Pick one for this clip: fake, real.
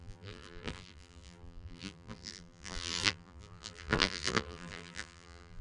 fake